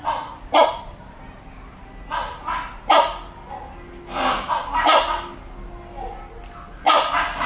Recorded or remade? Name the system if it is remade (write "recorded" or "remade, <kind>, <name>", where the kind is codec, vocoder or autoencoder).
recorded